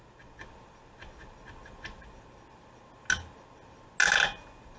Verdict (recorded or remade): recorded